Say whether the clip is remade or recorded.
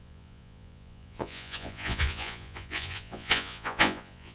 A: remade